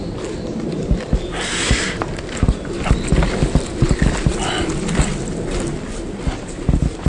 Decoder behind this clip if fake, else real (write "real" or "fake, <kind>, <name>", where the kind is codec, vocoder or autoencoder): real